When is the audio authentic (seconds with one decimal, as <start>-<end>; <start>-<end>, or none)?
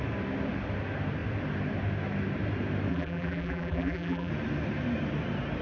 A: 0.0-2.9; 4.3-5.6